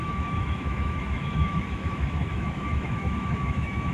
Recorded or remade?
remade